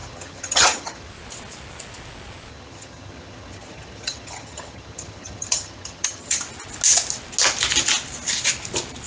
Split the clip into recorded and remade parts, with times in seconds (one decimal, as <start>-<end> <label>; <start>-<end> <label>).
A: 0.0-1.1 remade; 1.1-2.5 recorded; 2.5-6.4 remade; 6.4-9.1 recorded